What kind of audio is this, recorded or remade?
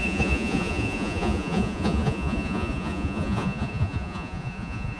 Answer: remade